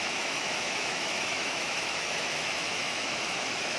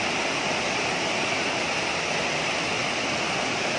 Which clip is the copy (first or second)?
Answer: first